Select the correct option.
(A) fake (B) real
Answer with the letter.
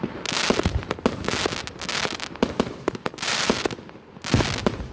B